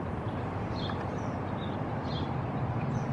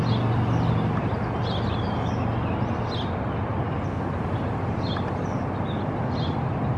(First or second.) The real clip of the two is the second